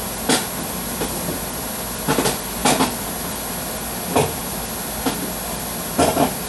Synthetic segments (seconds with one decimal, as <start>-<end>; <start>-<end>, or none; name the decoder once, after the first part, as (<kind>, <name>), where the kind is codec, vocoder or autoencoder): none